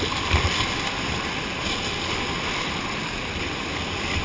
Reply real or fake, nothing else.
fake